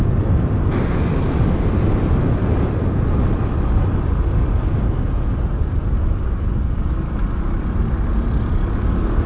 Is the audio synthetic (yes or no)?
no